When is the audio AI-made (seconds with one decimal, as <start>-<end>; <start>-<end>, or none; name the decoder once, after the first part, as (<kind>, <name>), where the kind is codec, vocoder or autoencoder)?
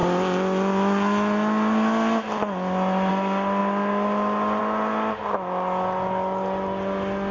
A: none